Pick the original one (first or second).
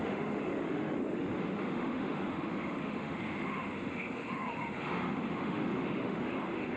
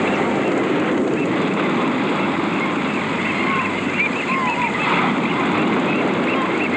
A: second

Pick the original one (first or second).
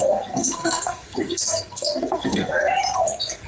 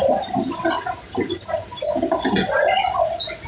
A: second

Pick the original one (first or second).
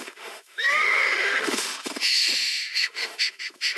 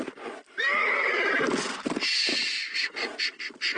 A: second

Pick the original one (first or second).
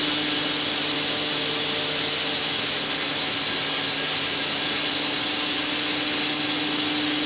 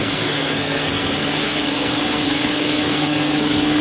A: first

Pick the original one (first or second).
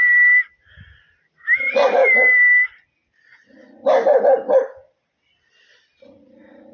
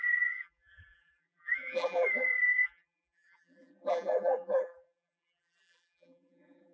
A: first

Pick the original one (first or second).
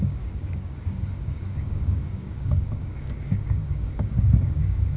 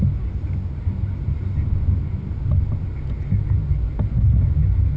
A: second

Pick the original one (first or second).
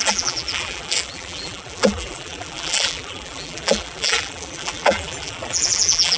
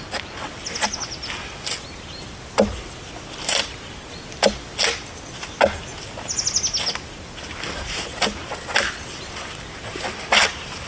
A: second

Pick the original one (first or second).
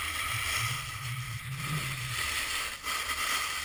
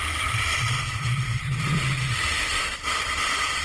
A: first